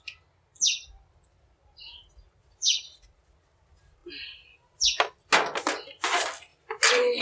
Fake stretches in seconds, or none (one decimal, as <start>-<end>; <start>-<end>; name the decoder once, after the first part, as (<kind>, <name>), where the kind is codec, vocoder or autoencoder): 2.4-3.1 (vocoder, BigVGAN v2)